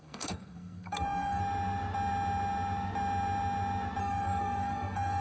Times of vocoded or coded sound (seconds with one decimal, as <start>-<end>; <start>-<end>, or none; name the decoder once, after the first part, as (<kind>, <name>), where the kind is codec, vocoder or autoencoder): 0.0-1.4 (codec, SNAC); 4.0-5.2